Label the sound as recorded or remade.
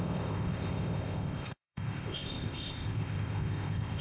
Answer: remade